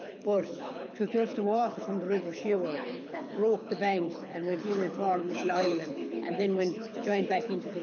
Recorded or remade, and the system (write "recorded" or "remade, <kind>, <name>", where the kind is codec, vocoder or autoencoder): remade, codec, HILCodec